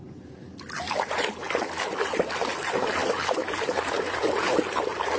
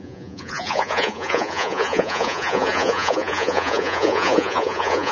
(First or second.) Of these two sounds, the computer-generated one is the second